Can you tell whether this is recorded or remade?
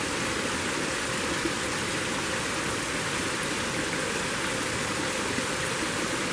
recorded